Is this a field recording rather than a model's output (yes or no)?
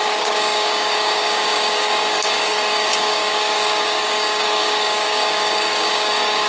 no